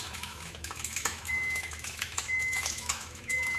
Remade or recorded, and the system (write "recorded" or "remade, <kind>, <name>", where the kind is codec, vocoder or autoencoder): remade, autoencoder, DAC-VAE